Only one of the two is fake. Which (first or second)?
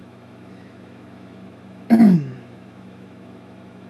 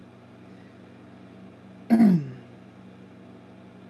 first